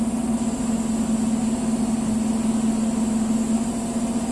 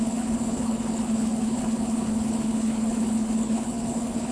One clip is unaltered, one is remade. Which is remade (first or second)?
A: second